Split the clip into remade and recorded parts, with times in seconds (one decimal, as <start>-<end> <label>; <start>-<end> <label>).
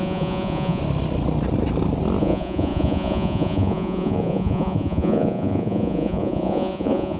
0.0-0.8 remade; 0.8-2.2 recorded; 2.2-7.2 remade